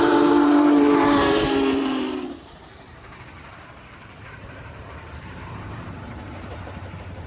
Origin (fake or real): fake